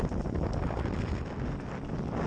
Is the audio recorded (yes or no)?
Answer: yes